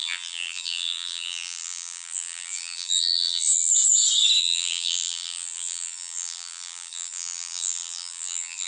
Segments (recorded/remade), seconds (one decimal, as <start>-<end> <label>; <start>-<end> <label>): 0.0-3.7 remade; 3.7-4.4 recorded; 4.4-8.7 remade